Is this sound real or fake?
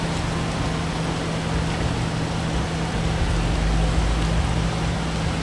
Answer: real